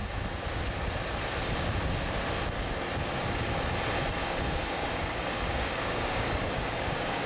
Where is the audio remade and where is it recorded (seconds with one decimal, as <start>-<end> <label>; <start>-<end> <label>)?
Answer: 0.0-4.2 recorded; 4.2-7.3 remade